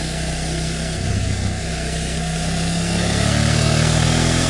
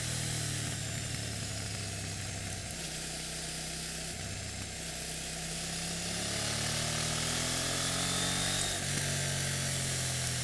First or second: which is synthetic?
first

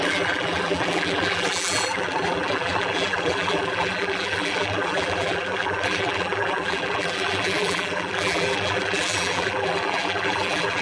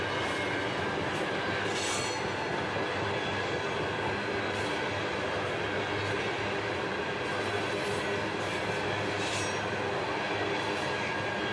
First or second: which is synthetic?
first